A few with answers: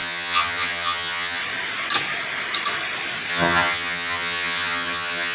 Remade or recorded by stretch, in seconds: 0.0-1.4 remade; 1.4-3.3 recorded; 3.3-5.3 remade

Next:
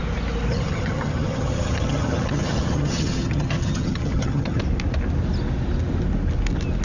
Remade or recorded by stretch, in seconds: 0.0-0.5 recorded; 0.5-4.6 remade; 4.6-6.8 recorded